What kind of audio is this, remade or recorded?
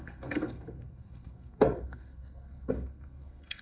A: remade